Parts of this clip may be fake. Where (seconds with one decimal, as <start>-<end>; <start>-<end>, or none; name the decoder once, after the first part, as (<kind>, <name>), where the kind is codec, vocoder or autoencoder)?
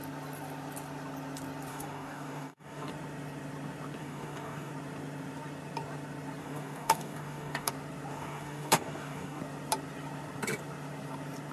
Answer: 1.7-2.9 (codec, DAC); 4.0-4.7; 6.4-7.7; 8.1-9.4